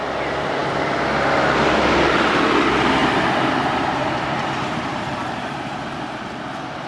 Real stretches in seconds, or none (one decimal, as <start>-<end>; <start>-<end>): 0.0-3.0; 6.4-6.9